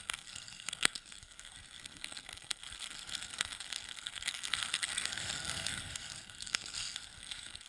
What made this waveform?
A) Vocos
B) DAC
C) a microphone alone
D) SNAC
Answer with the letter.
D